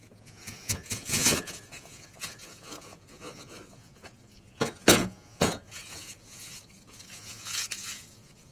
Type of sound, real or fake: fake